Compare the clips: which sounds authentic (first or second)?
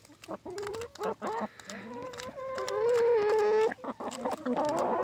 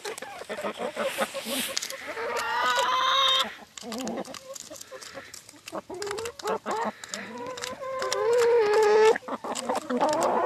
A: first